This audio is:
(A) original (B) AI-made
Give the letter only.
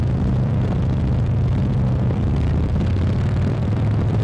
B